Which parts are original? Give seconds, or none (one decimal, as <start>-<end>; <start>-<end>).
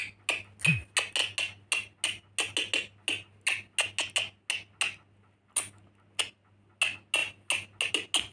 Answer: 0.0-8.3